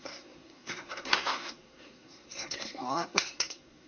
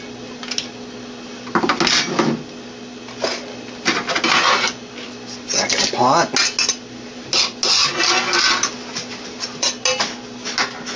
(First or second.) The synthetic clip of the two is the first